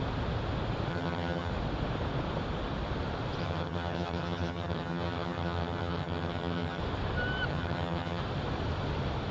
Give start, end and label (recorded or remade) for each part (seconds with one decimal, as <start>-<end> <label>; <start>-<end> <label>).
0.0-0.9 recorded; 0.9-1.5 remade; 1.5-3.4 recorded; 3.4-6.8 remade; 6.8-7.5 recorded; 7.5-8.2 remade; 8.2-9.3 recorded

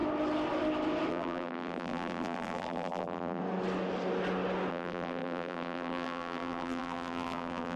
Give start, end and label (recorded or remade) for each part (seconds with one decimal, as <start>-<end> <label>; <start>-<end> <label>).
0.0-1.1 recorded; 1.1-3.4 remade; 3.4-4.7 recorded; 4.7-7.8 remade

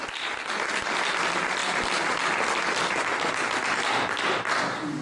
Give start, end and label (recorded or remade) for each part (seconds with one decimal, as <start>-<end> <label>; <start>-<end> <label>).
0.0-5.0 recorded

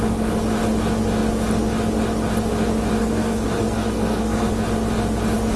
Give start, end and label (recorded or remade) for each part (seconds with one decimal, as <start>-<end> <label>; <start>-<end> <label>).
0.0-3.0 recorded; 3.0-4.5 remade; 4.5-5.6 recorded

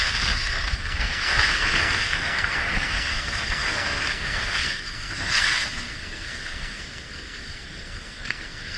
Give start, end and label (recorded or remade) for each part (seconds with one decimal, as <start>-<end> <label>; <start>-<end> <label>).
0.0-8.8 remade

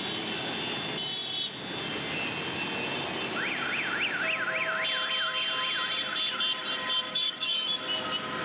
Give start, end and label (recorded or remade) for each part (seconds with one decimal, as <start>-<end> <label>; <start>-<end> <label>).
0.0-7.1 recorded; 7.1-7.8 remade; 7.8-8.4 recorded